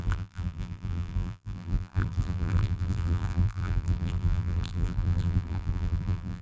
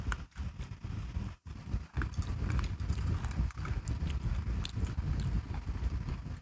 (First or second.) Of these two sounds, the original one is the second